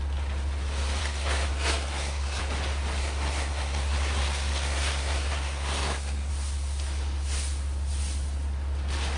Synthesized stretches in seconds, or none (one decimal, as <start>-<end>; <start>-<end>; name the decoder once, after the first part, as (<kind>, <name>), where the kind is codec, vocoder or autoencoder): 1.0-2.4 (codec, SNAC); 3.0-6.3